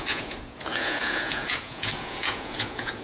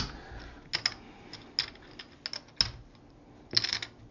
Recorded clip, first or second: second